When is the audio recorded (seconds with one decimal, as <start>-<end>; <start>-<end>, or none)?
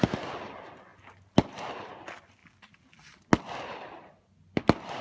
0.0-5.0